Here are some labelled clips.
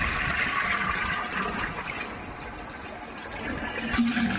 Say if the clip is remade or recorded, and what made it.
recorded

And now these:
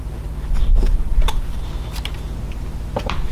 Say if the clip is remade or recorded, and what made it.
recorded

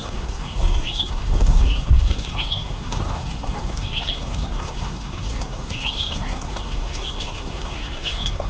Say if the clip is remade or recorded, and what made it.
remade, codec, SNAC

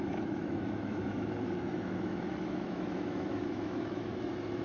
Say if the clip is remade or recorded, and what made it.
remade, autoencoder, DAC-VAE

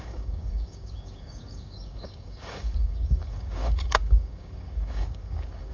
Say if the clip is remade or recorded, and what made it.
remade, codec, DAC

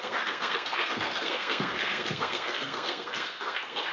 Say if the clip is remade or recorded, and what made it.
remade, codec, SNAC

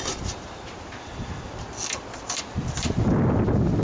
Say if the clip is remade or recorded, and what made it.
recorded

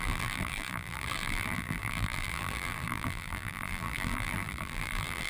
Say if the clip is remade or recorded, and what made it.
remade, vocoder, BigVGAN v2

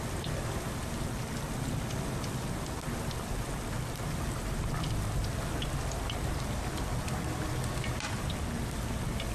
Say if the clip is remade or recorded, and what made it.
recorded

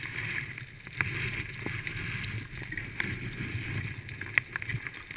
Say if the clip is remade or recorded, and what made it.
recorded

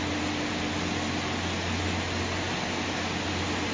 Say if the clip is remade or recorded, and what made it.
recorded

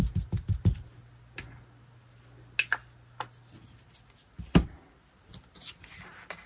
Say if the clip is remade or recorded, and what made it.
recorded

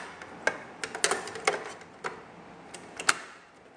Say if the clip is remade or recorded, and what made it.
recorded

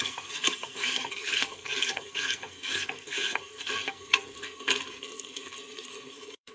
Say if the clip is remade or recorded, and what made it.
remade, codec, SNAC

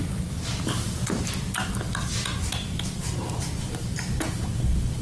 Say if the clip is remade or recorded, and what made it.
recorded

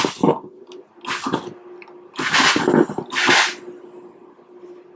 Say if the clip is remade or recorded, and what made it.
recorded